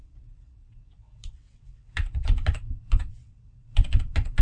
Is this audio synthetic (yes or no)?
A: yes